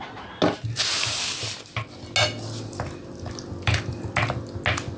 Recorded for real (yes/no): yes